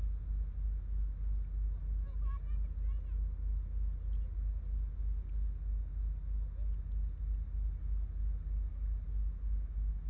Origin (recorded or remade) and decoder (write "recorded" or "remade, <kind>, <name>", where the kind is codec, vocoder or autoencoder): recorded